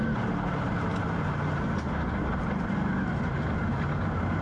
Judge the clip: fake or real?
real